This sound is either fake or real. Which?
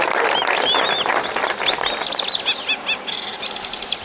real